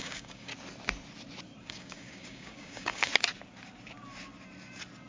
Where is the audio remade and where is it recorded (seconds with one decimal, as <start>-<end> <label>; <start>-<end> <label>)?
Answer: 0.0-0.5 remade; 0.5-1.6 recorded; 1.6-3.1 remade; 3.1-5.1 recorded